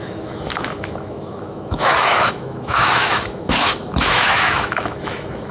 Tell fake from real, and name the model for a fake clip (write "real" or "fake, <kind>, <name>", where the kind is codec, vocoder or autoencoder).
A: fake, autoencoder, DAC-VAE